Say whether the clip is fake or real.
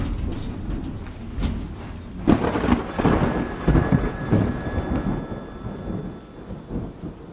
real